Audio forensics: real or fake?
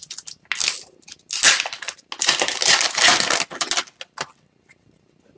real